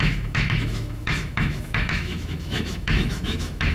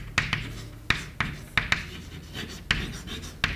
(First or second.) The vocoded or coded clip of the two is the first